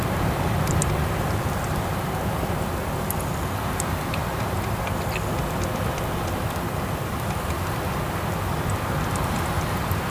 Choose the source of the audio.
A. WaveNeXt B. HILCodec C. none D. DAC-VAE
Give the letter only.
C